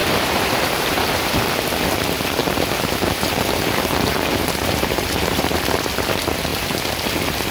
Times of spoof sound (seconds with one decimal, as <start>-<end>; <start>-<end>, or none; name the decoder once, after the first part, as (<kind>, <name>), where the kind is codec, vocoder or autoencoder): 0.0-1.5 (vocoder, BigVGAN v2); 2.4-5.6